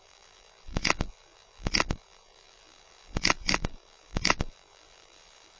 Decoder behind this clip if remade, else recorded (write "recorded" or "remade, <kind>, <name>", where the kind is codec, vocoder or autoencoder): remade, vocoder, BigVGAN v2